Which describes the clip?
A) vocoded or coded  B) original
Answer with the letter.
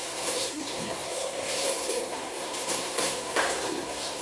A